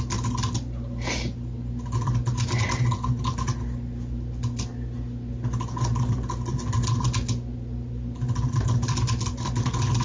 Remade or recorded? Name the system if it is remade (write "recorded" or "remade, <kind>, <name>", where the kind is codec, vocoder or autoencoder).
recorded